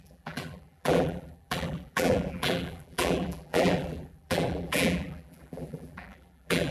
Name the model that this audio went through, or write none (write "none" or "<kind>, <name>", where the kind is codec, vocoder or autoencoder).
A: vocoder, BigVGAN v2